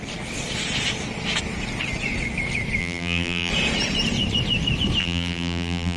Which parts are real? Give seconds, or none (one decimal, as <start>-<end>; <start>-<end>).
0.0-2.8; 3.5-5.0

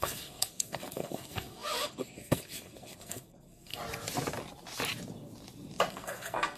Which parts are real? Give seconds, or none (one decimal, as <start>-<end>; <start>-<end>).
3.8-5.9

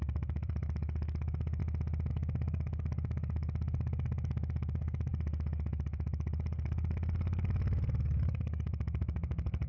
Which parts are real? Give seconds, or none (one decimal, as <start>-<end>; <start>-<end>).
1.6-2.1